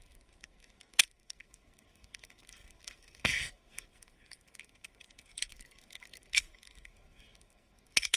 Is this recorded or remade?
remade